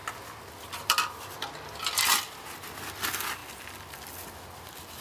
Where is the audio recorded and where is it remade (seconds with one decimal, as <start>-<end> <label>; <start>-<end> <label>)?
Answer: 0.0-5.0 recorded